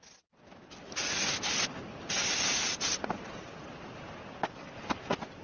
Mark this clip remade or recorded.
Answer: recorded